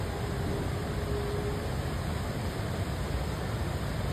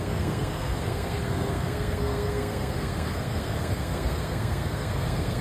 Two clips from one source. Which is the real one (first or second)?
first